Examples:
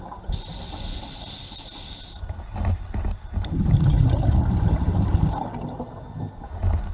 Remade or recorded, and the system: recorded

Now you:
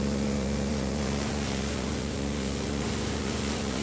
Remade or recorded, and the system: remade, vocoder, Vocos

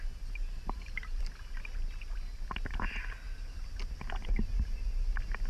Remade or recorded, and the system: recorded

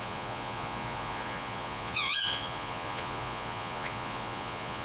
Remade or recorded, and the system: remade, vocoder, Vocos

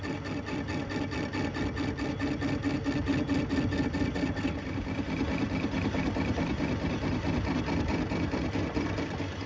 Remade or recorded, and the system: recorded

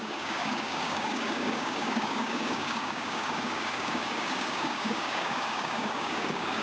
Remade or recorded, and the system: remade, codec, DAC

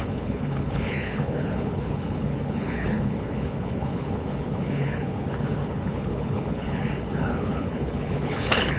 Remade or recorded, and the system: remade, codec, HILCodec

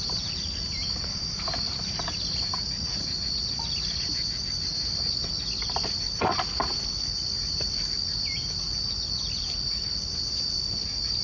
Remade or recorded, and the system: remade, vocoder, BigVGAN v2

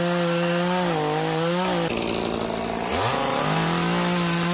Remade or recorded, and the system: recorded